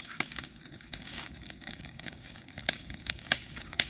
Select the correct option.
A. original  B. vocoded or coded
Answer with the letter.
B